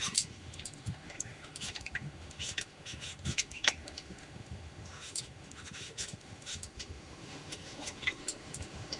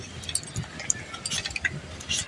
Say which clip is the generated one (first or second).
first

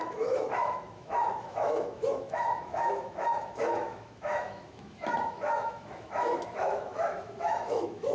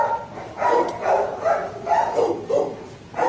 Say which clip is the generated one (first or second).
first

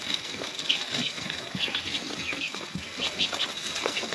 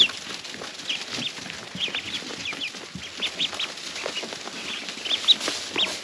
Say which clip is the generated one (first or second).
first